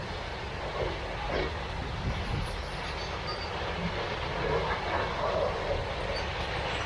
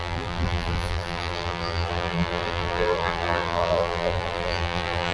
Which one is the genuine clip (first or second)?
first